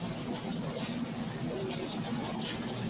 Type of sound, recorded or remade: recorded